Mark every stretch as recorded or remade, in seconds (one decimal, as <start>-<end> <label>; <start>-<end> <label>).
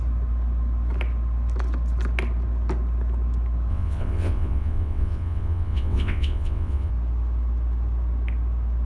0.0-3.7 recorded; 3.7-6.9 remade; 6.9-8.8 recorded